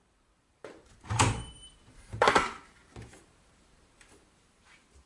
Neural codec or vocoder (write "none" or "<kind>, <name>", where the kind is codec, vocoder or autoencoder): vocoder, BigVGAN v2